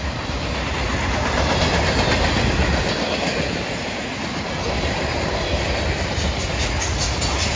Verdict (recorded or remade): recorded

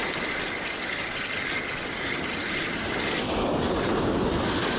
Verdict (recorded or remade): recorded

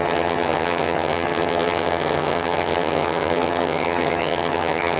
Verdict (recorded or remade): remade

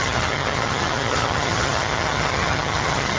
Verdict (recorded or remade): remade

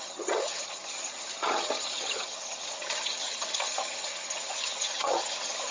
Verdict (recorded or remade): remade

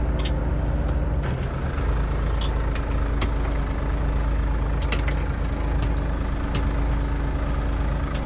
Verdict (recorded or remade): recorded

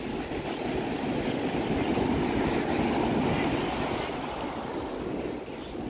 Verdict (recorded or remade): recorded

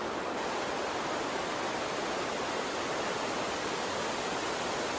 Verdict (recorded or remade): recorded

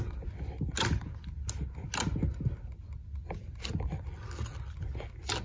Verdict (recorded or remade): recorded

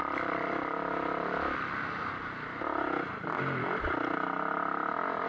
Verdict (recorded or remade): recorded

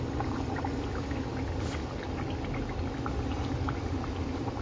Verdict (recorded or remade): recorded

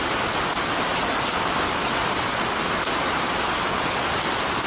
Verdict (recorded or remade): recorded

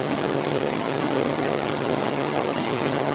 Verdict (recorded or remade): remade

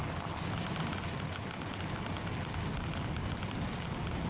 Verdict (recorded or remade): recorded